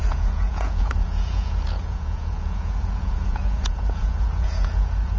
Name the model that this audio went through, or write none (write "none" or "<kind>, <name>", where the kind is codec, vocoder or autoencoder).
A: vocoder, Vocos